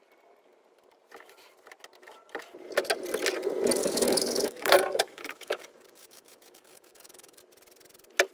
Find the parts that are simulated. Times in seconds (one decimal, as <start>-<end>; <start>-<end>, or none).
3.8-7.4